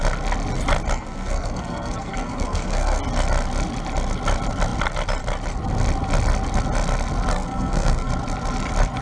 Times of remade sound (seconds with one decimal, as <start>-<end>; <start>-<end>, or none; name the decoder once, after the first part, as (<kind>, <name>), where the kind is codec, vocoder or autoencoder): 0.9-3.0 (codec, SNAC); 7.3-8.1

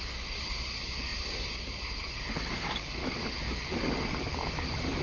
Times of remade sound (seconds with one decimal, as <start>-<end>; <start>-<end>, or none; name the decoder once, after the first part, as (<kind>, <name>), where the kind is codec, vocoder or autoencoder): 0.0-3.7 (vocoder, BigVGAN v2); 4.3-5.0

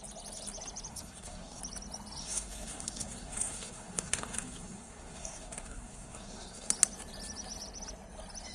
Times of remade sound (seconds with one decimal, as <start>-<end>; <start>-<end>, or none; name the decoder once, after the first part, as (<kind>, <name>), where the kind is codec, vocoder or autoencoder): 0.9-1.6 (codec, SNAC); 2.2-6.7

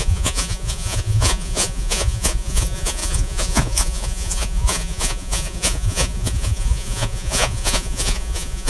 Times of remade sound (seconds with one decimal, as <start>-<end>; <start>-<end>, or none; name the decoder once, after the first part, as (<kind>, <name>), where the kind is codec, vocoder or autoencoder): 0.0-8.7 (vocoder, Vocos)

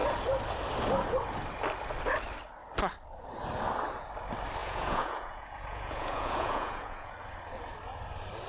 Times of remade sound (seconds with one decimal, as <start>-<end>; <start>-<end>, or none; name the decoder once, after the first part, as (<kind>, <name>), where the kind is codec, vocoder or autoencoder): 4.6-7.1 (vocoder, Vocos)